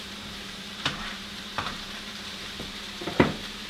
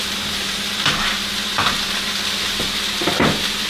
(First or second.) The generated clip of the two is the first